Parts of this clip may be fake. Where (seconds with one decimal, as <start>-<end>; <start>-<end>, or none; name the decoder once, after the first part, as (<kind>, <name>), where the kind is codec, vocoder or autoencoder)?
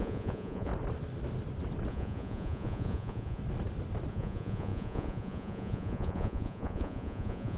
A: 0.0-0.7 (vocoder, Vocos); 1.9-3.4; 4.1-7.6